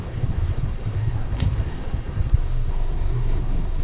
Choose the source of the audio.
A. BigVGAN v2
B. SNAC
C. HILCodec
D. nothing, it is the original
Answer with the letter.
B